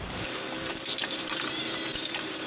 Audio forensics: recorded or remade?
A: remade